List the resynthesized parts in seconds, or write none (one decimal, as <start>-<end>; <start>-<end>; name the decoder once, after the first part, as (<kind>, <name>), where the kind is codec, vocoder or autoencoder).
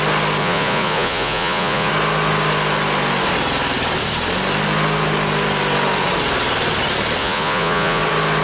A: 0.4-1.9 (vocoder, Vocos); 7.2-8.0